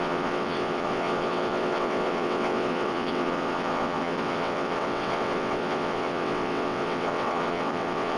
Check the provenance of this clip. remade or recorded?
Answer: remade